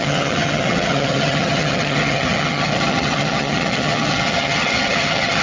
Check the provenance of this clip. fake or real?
fake